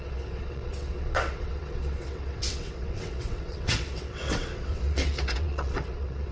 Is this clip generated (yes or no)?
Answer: yes